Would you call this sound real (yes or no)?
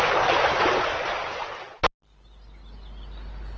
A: yes